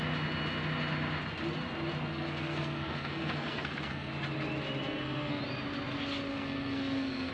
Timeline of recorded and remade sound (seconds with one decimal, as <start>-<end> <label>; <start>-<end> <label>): 0.0-2.1 recorded; 2.1-4.1 remade; 4.1-4.8 recorded; 4.8-5.4 remade; 5.4-6.3 recorded; 6.3-7.3 remade